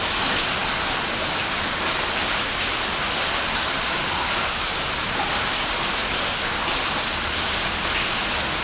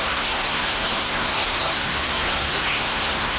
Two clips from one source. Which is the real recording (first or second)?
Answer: first